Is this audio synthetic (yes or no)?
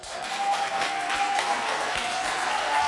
yes